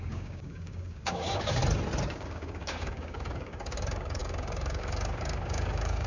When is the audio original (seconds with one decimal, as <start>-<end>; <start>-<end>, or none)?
1.6-2.1